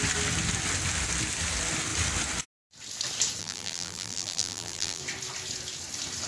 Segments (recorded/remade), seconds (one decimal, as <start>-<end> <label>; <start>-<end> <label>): 0.0-3.4 recorded; 3.4-5.0 remade; 5.0-6.3 recorded